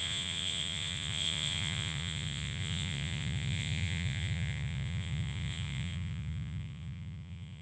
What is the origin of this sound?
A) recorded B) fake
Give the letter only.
B